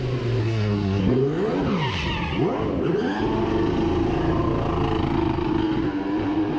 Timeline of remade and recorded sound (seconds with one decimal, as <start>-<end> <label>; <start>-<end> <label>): 0.0-0.4 recorded; 0.4-1.0 remade; 1.0-6.6 recorded